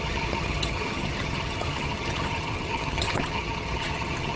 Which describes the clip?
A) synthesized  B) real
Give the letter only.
A